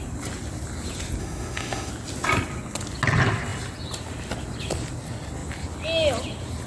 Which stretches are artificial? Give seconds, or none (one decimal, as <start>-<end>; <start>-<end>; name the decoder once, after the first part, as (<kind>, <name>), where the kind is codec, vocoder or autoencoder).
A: 1.2-1.9 (autoencoder, DAC-VAE)